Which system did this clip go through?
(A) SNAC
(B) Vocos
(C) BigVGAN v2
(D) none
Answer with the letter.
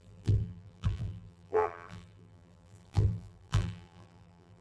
C